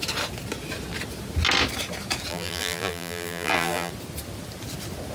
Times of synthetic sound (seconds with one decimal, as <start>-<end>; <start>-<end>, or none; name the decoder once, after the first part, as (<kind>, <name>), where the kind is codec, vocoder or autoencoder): 2.3-3.9 (vocoder, BigVGAN v2)